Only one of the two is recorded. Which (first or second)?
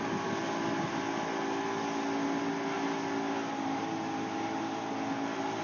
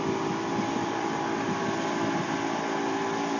first